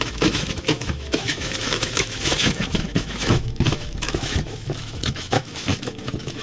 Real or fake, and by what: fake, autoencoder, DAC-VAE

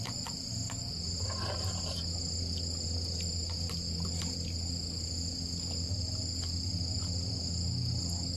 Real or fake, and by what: real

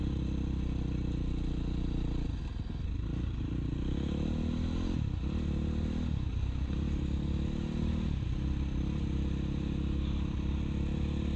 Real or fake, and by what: real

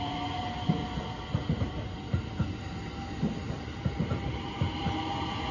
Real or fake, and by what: real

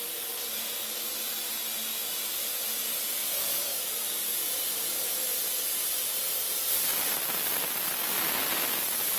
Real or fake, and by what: real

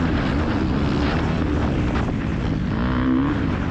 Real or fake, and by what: real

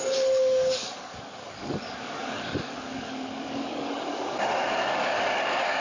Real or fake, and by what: fake, codec, DAC